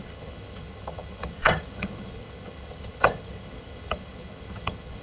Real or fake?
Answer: fake